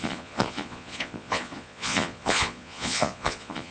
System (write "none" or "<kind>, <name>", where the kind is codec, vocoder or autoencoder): vocoder, Vocos